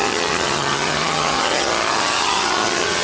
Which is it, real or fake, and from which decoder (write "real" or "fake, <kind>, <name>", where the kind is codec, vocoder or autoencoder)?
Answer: fake, vocoder, HiFi-GAN